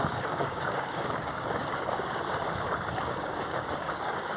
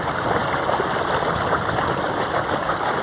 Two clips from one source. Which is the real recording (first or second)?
second